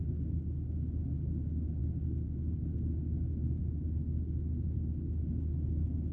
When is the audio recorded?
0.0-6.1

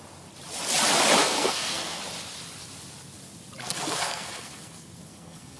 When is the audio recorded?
0.0-1.2; 2.0-3.6

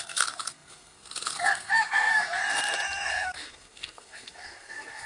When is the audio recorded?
2.4-3.1

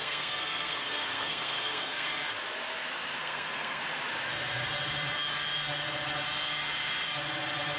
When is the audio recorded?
2.1-3.2; 3.8-7.8

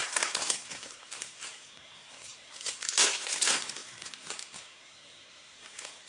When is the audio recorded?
none